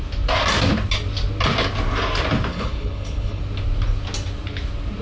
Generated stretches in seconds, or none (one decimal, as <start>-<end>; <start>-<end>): 2.5-3.4